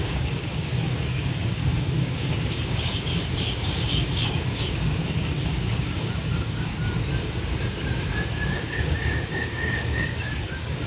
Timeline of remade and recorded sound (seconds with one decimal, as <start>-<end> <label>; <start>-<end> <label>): 0.0-6.7 remade; 6.7-7.2 recorded; 7.2-10.9 remade